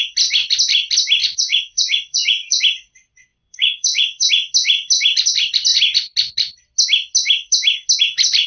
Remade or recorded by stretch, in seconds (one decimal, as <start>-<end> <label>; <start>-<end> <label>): 0.0-1.2 recorded; 1.2-2.6 remade; 2.6-3.3 recorded; 3.3-4.3 remade; 4.3-8.5 recorded